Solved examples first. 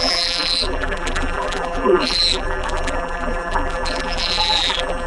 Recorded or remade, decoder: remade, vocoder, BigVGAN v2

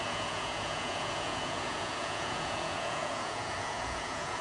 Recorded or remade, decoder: remade, vocoder, Vocos